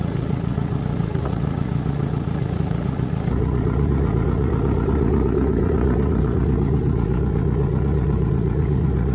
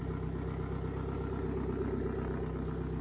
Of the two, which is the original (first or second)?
second